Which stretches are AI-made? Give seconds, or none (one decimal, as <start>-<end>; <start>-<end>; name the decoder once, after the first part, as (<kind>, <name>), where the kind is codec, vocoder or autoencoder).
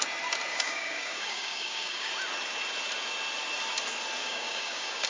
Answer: 0.5-2.1 (codec, DAC); 4.2-5.1